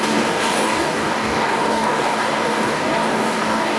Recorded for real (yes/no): no